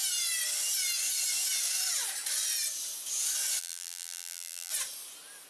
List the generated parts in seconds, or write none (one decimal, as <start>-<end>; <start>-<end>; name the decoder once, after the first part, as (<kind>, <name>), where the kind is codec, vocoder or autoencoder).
3.6-4.7 (vocoder, BigVGAN v2)